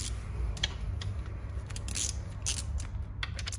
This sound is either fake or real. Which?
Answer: real